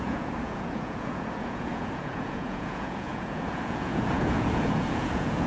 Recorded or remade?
remade